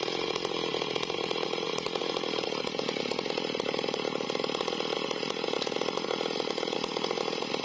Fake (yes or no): no